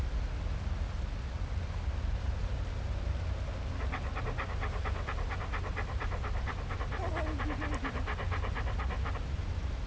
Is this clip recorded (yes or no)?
yes